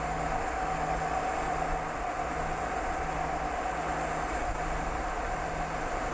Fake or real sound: real